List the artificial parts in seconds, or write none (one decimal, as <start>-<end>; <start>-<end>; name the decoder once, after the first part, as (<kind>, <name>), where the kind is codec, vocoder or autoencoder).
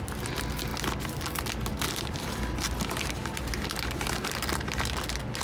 0.7-2.4 (vocoder, BigVGAN v2)